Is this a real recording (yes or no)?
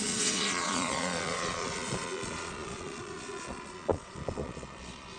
no